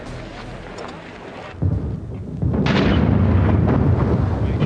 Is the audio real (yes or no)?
yes